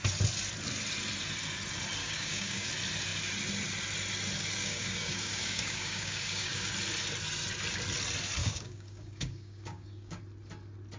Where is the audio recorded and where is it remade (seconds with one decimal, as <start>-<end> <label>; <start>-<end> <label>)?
0.0-2.0 recorded; 2.0-2.7 remade; 2.7-4.6 recorded; 4.6-6.7 remade; 6.7-8.4 recorded; 8.4-10.2 remade; 10.2-11.0 recorded